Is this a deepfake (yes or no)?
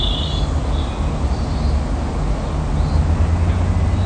no